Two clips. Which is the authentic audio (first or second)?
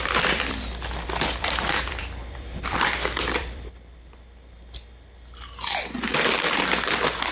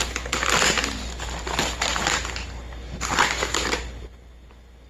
second